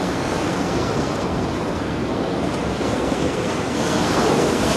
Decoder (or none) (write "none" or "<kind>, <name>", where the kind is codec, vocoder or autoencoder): codec, SNAC